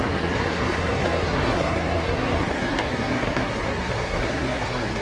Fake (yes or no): yes